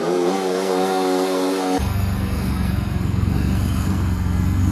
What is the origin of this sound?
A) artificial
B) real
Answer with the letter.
A